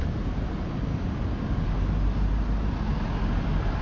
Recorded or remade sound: recorded